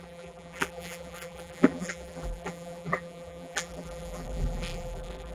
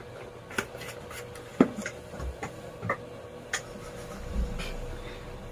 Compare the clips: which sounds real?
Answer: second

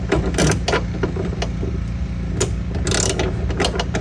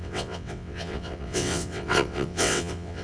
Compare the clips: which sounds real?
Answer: first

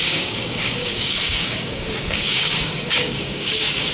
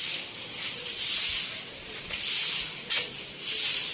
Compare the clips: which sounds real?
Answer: second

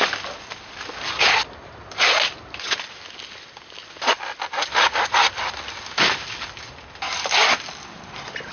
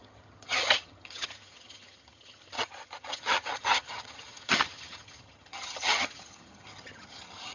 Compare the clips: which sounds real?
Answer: first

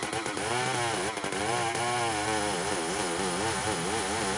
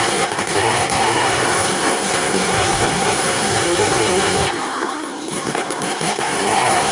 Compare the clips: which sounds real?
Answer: first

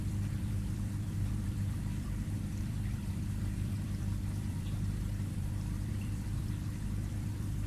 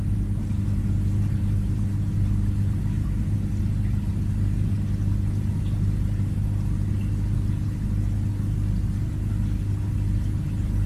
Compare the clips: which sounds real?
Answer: second